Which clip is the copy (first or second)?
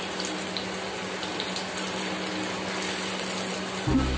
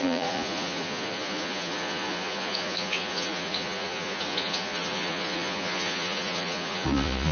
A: second